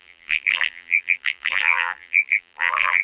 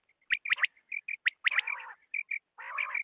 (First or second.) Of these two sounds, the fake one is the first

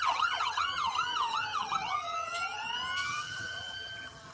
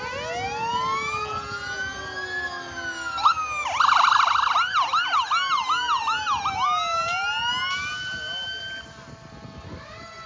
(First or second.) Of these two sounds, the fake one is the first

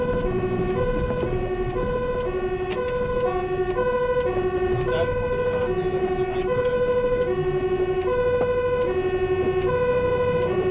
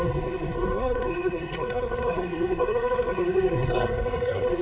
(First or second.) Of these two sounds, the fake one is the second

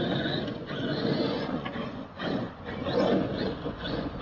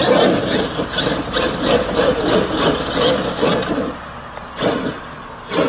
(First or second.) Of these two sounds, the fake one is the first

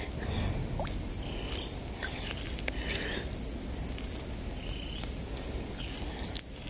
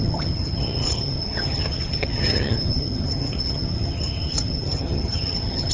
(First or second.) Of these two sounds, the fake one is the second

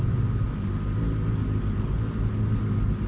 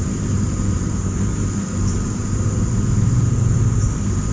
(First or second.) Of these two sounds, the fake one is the second